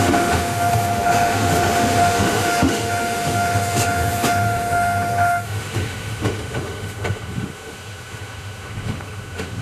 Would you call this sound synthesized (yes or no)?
yes